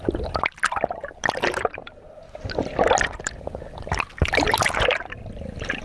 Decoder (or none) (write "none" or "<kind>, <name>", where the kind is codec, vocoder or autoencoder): none